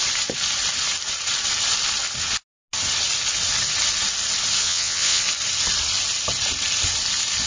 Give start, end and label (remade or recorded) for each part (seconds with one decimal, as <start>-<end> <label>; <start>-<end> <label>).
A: 0.0-4.6 recorded; 4.6-5.2 remade; 5.2-7.5 recorded